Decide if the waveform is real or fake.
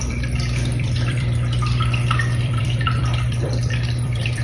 fake